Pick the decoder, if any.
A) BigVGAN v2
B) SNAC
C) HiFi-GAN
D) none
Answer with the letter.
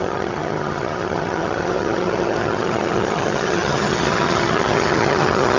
C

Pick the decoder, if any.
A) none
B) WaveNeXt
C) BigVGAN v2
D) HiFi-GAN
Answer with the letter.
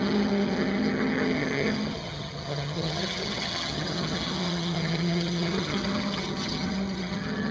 D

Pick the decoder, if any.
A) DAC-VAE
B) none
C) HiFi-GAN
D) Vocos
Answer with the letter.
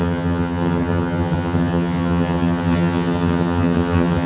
C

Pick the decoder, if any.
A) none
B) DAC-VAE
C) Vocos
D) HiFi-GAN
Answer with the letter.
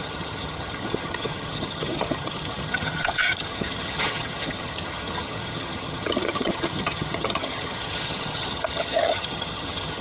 D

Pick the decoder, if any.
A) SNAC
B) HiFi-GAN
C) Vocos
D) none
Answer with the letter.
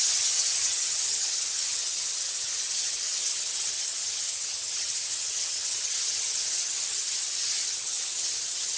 B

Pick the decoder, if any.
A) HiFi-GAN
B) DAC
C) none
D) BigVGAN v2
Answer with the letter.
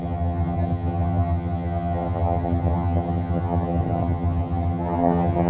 A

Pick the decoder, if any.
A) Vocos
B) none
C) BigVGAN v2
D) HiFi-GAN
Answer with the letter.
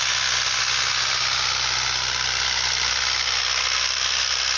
B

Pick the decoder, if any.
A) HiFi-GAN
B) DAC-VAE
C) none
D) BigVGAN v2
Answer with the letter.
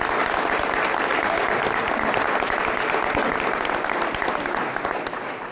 C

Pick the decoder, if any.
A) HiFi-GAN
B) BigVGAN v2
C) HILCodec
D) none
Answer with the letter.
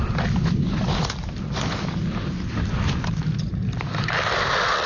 D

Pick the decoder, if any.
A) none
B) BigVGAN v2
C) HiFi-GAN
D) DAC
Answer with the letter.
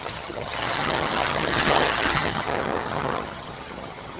C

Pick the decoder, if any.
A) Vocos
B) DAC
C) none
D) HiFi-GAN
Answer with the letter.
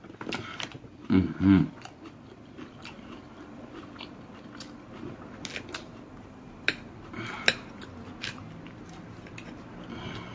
C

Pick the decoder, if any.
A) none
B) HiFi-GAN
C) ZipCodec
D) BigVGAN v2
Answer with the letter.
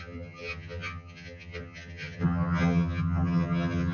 B